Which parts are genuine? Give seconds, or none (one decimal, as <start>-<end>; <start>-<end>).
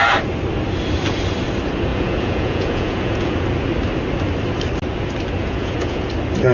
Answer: 0.0-1.9; 3.3-5.4; 6.1-6.5